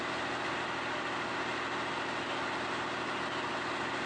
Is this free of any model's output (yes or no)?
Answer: yes